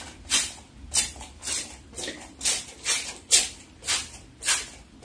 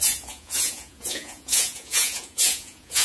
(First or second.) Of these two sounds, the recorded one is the first